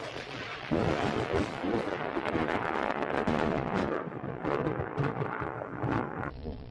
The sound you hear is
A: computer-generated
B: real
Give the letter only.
A